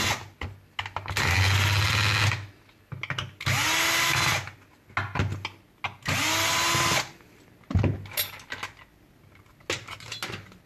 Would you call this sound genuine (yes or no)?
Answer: yes